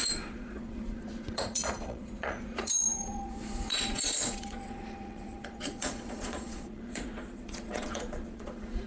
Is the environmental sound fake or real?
fake